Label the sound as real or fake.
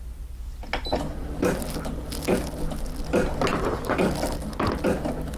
real